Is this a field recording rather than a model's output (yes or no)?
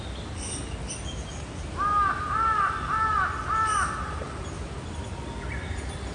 yes